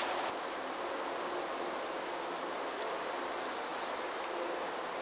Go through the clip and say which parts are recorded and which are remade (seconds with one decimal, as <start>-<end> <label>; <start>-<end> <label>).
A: 0.0-5.0 recorded